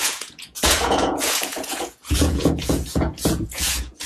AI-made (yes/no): yes